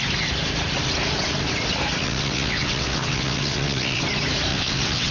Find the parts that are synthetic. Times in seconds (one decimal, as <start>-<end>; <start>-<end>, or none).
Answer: 2.0-4.0; 4.5-5.1